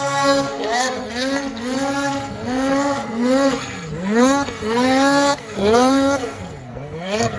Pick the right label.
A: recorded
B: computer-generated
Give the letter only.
B